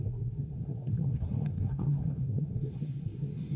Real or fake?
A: fake